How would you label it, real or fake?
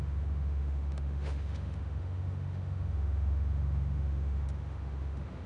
fake